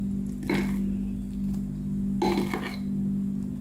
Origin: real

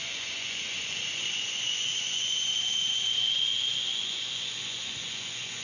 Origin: fake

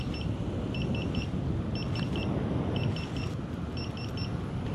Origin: real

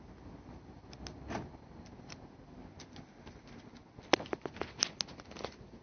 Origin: real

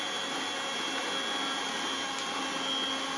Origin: real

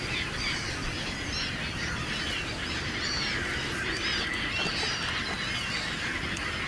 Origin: real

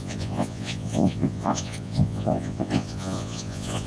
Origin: fake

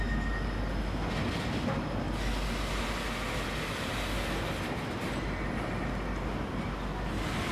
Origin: real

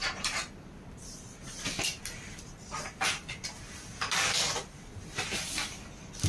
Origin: real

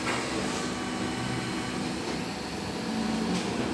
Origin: real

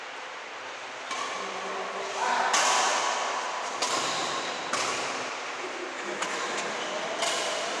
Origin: real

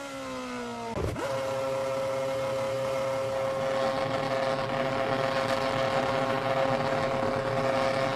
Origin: real